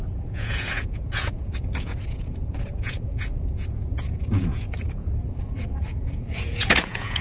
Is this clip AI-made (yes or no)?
yes